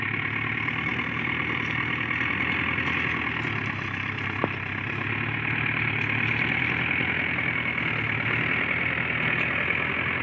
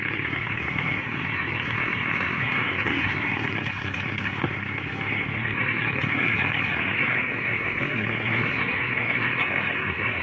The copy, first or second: second